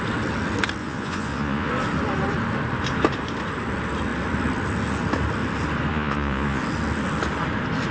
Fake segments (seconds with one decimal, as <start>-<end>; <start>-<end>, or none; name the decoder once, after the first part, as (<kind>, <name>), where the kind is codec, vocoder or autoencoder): 0.8-1.7 (vocoder, Vocos); 5.9-6.6